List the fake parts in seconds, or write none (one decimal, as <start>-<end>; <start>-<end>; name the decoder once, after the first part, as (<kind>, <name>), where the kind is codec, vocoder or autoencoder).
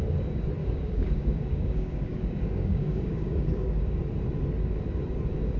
0.6-4.0 (codec, DAC)